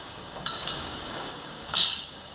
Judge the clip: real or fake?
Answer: fake